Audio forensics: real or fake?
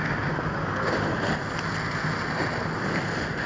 real